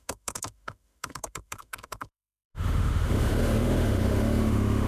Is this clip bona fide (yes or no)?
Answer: no